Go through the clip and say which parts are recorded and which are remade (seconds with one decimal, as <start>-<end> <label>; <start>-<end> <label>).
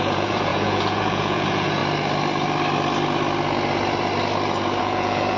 0.0-1.8 remade; 1.8-4.8 recorded; 4.8-5.4 remade